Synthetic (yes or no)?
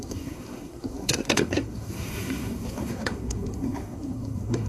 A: yes